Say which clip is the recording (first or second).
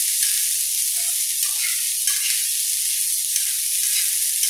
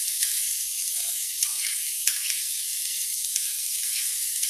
first